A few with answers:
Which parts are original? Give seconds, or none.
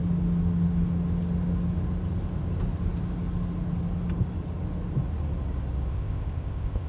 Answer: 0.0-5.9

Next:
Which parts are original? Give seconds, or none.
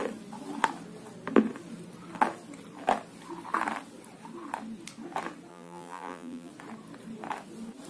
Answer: 0.0-5.5; 6.5-7.9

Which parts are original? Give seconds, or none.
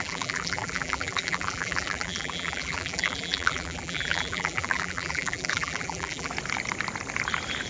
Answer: 6.3-7.7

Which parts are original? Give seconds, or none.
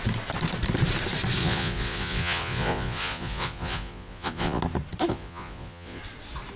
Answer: 0.0-1.4; 4.6-5.1; 6.0-6.6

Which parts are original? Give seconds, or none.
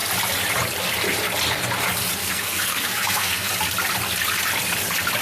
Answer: 0.0-2.2; 3.5-5.2